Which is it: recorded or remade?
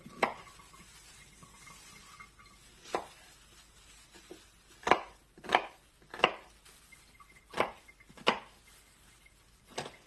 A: recorded